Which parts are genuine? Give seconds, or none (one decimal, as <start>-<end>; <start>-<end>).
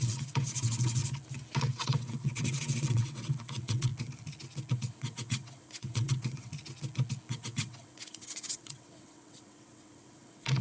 1.0-1.6; 3.9-4.7; 6.5-7.3